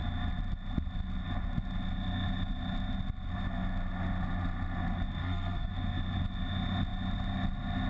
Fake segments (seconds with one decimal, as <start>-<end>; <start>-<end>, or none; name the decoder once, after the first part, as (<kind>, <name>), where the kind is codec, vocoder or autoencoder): 5.2-5.7 (codec, SNAC)